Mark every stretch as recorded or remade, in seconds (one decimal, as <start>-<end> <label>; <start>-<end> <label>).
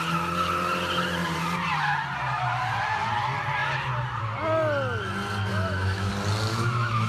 0.0-5.5 recorded; 5.5-6.1 remade; 6.1-6.5 recorded; 6.5-7.1 remade